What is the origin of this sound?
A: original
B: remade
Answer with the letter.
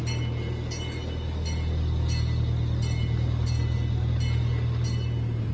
A